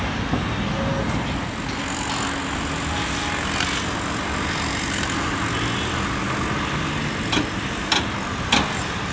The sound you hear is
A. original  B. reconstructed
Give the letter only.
A